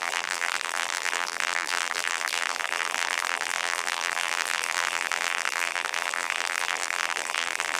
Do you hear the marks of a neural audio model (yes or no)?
yes